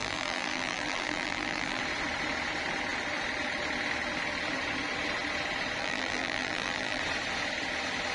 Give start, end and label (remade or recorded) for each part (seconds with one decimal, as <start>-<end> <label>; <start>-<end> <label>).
0.0-1.8 remade; 1.8-5.8 recorded; 5.8-7.0 remade; 7.0-8.1 recorded